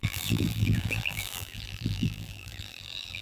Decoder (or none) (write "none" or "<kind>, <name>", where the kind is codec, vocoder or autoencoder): vocoder, BigVGAN v2